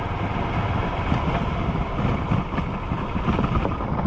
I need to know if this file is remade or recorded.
recorded